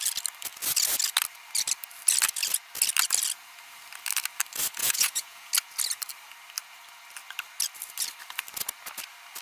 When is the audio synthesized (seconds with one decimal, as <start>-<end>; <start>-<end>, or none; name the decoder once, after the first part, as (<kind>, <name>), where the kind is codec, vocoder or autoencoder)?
4.8-5.5 (vocoder, Vocos)